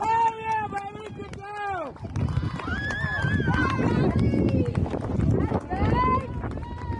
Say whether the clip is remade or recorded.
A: recorded